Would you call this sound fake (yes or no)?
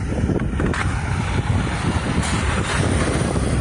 no